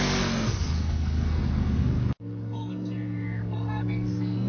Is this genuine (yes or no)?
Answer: no